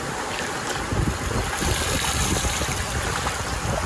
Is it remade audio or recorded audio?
recorded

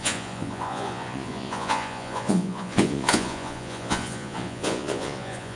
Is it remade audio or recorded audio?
remade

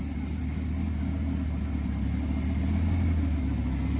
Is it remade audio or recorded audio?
recorded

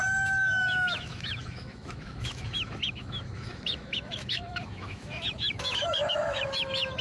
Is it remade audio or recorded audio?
remade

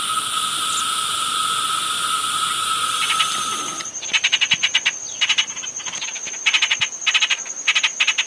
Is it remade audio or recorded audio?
recorded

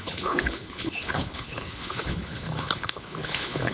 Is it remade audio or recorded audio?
remade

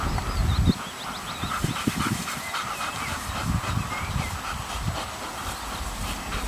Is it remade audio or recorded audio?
recorded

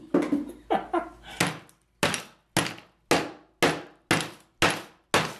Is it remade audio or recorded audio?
recorded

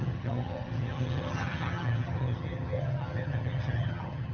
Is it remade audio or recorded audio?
remade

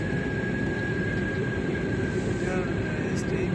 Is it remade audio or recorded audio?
recorded